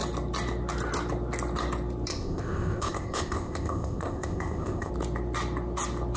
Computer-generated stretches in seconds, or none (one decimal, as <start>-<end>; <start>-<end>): 2.1-4.9